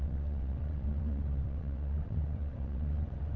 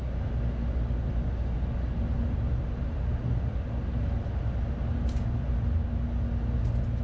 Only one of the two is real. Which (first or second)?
second